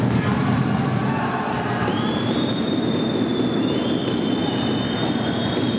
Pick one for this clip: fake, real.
real